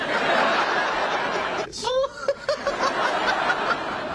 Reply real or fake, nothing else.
real